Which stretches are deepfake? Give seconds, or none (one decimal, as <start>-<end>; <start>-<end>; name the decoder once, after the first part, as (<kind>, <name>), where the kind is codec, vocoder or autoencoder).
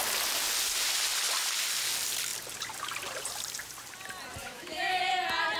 4.4-5.0 (autoencoder, DAC-VAE)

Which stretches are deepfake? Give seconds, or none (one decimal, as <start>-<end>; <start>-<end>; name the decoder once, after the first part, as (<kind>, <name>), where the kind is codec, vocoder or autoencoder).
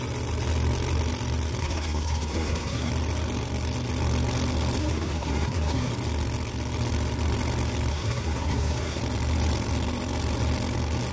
1.6-2.9 (codec, SNAC); 4.8-5.9; 7.9-9.0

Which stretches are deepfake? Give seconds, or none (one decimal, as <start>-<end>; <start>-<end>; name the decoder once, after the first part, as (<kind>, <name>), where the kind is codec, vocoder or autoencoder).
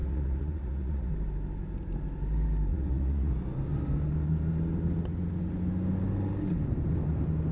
0.0-1.1 (vocoder, Vocos); 2.7-3.3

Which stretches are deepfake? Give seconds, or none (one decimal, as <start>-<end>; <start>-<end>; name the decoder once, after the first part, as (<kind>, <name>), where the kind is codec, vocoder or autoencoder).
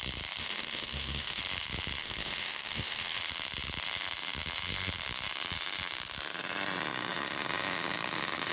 0.4-1.4 (autoencoder, DAC-VAE); 2.0-3.2